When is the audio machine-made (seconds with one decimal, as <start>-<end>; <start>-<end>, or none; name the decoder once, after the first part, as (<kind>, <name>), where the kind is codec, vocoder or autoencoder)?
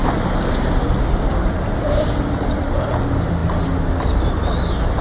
0.0-3.0 (vocoder, BigVGAN v2)